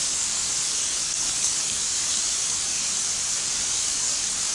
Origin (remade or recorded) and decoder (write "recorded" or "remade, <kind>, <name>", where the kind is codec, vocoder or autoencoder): remade, codec, DAC